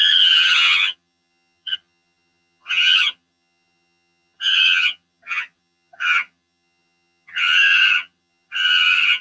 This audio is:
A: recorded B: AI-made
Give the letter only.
B